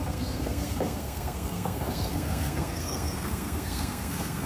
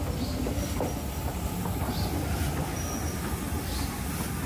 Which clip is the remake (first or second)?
first